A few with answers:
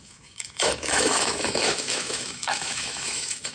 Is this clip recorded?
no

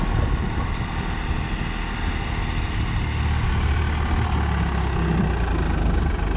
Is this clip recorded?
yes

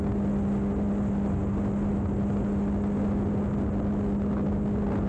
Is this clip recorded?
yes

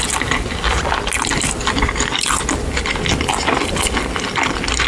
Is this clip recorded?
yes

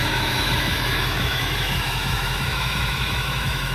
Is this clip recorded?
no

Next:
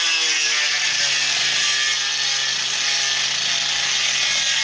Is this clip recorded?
yes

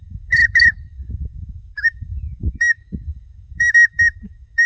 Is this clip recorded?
no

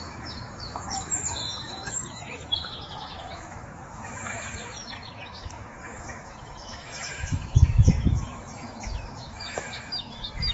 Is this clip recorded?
no